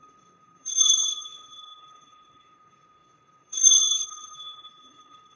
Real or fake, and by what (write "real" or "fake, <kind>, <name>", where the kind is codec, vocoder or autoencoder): fake, codec, HILCodec